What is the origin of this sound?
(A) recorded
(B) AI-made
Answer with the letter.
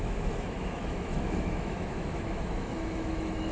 B